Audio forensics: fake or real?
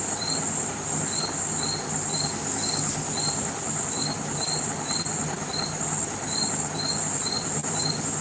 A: real